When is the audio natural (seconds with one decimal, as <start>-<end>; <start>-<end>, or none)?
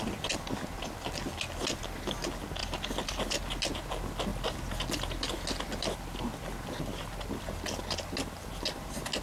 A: 0.0-9.2